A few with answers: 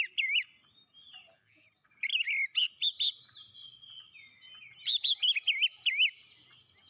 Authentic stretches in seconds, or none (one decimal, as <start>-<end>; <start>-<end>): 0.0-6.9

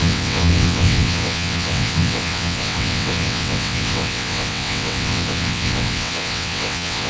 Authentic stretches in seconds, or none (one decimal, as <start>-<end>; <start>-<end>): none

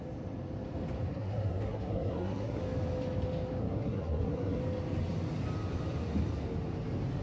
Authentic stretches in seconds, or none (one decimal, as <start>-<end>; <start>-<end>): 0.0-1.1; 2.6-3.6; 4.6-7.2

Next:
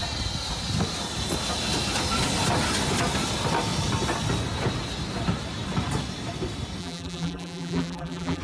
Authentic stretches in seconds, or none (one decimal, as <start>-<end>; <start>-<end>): 0.0-6.8

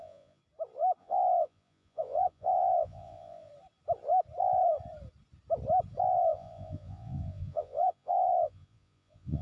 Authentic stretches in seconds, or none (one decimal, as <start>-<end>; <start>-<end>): 0.4-1.0; 3.5-6.1